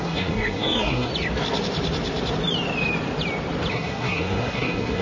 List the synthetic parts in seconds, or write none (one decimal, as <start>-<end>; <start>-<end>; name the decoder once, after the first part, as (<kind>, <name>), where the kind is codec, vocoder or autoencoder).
0.0-1.1 (codec, SNAC); 3.7-5.0